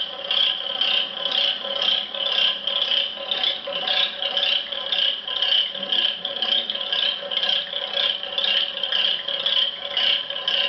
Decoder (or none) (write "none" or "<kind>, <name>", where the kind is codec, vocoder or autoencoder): none